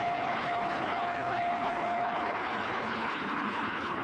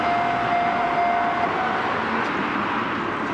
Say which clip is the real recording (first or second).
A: second